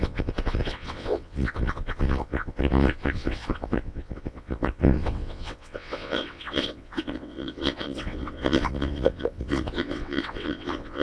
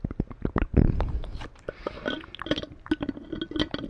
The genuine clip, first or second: second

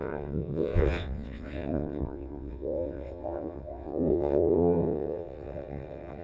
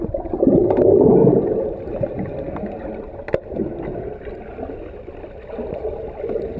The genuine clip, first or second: second